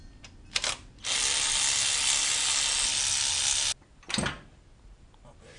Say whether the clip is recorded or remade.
recorded